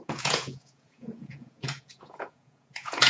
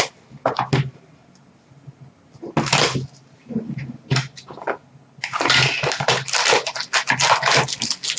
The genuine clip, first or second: second